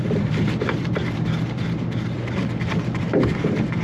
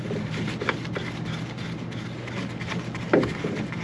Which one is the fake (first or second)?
first